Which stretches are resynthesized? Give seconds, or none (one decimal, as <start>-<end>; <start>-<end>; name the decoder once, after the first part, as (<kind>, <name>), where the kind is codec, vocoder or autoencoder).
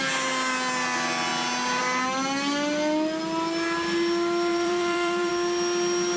4.5-5.3 (vocoder, BigVGAN v2)